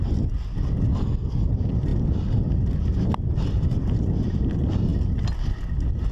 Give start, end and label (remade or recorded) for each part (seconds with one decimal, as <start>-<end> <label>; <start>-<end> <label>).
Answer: 0.0-0.9 recorded; 0.9-1.5 remade; 1.5-6.1 recorded